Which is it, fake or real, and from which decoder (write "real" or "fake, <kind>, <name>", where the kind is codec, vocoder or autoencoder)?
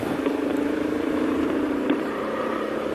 fake, vocoder, BigVGAN v2